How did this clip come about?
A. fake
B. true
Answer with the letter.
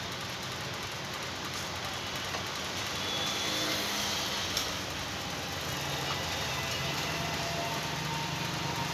B